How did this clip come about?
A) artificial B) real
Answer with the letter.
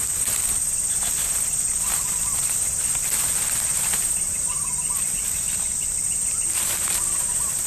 B